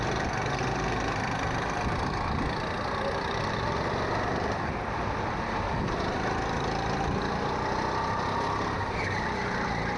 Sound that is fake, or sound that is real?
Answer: real